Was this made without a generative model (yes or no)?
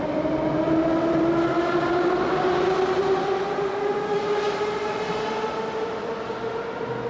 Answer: yes